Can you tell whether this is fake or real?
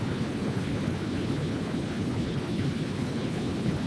fake